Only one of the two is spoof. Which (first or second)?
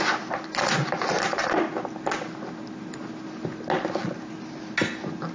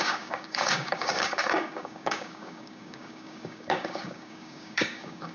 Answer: second